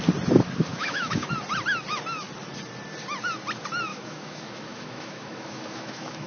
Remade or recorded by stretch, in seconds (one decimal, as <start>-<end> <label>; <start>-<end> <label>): 0.0-0.7 recorded; 0.7-1.3 remade; 1.3-3.9 recorded; 3.9-6.3 remade